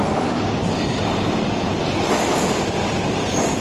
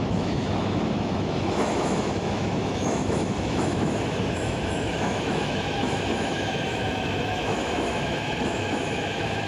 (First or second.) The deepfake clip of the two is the second